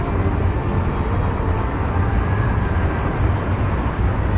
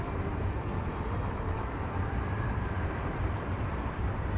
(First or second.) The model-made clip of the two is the second